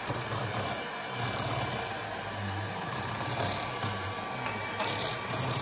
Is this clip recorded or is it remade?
remade